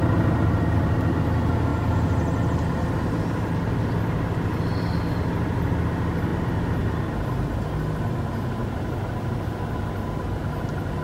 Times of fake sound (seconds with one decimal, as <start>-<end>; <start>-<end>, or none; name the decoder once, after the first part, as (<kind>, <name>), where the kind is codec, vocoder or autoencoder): none